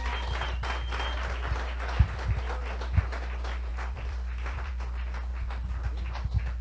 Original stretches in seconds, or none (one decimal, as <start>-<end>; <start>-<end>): 0.0-3.7; 4.7-6.6